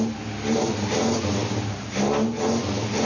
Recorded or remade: recorded